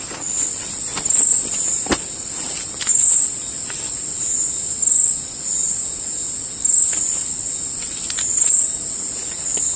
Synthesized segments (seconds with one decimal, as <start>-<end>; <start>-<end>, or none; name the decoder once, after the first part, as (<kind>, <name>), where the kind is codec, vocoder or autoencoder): none